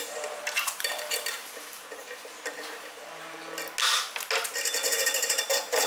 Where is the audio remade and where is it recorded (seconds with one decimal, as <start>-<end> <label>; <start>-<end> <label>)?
0.0-3.4 remade; 3.4-4.9 recorded; 4.9-5.9 remade